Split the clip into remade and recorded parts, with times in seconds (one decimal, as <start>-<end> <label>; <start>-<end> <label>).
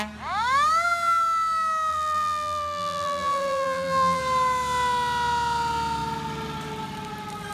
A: 0.0-1.9 recorded; 1.9-4.2 remade; 4.2-7.5 recorded